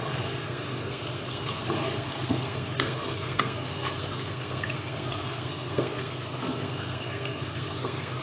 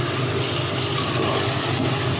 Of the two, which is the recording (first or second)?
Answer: second